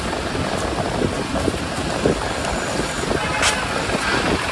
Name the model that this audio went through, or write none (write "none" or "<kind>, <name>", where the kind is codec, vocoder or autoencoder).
none